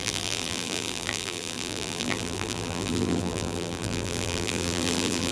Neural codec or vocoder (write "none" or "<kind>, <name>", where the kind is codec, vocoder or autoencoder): vocoder, BigVGAN v2